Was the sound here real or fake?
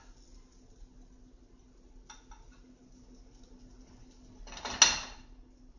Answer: real